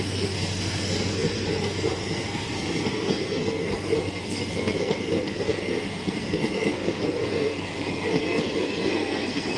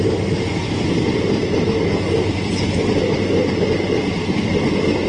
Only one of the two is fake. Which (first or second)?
first